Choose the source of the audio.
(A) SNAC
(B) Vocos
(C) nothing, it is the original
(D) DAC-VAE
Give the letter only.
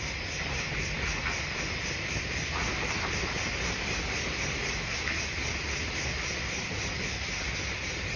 C